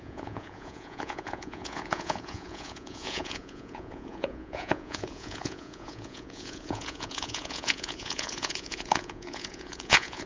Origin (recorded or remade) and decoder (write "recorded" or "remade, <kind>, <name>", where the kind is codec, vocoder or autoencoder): remade, vocoder, Vocos